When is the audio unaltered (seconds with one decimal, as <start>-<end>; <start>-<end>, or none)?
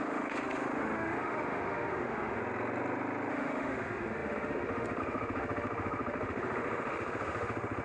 2.4-3.3